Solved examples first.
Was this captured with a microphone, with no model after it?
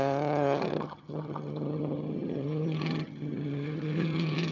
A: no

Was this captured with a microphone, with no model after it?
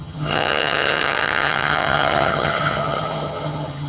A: no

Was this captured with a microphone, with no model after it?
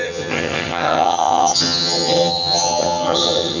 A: no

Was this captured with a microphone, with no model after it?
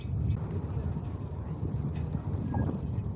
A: yes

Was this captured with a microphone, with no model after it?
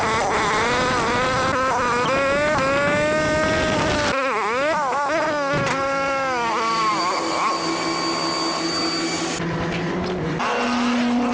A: yes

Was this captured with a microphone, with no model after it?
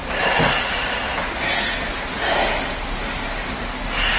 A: yes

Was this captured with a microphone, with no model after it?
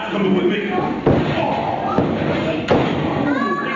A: yes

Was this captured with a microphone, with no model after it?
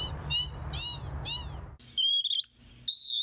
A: yes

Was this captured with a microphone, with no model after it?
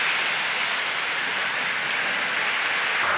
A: yes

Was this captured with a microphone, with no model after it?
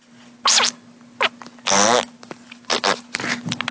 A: yes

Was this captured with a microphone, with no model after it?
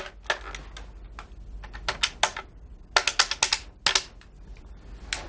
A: yes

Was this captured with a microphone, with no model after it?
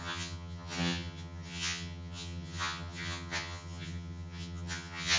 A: no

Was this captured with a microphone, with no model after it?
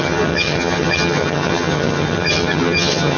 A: no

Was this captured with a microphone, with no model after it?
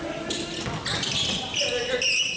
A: yes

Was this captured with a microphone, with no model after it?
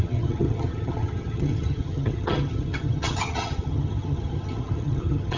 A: no